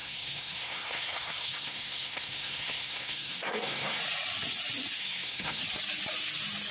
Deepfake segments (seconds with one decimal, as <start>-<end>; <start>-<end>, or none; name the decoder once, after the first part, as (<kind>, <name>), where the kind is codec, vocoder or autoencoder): 0.0-4.0 (codec, SNAC); 5.0-5.6